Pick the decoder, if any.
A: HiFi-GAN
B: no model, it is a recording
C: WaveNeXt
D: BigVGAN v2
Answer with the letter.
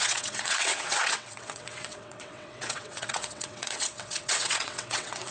C